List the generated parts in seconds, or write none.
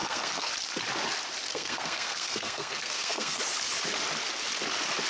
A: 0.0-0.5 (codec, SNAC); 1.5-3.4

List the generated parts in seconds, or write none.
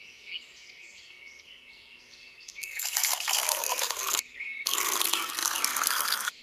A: 0.0-6.4 (codec, SNAC)